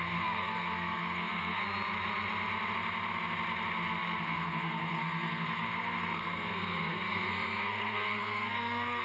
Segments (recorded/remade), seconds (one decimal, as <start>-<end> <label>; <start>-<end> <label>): 0.0-1.6 remade; 1.6-4.2 recorded; 4.2-9.0 remade